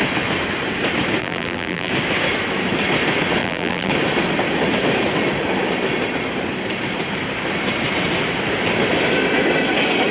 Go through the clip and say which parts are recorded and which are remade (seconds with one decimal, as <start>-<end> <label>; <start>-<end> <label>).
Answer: 0.0-1.2 recorded; 1.2-1.9 remade; 1.9-3.4 recorded; 3.4-3.9 remade; 3.9-10.1 recorded